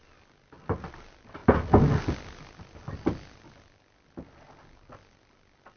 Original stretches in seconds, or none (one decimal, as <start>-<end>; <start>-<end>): 0.0-5.8

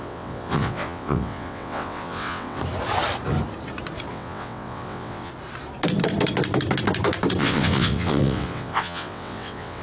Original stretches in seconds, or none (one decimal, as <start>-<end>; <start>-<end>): 2.6-4.1; 5.3-7.4

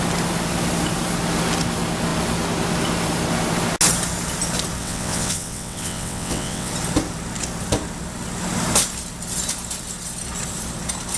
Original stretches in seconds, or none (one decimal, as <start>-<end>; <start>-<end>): 0.0-4.8; 6.7-11.2